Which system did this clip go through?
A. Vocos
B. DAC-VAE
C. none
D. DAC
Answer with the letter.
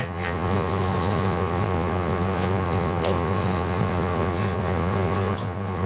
A